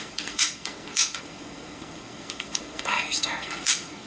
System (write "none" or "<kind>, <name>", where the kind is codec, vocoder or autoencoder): codec, SNAC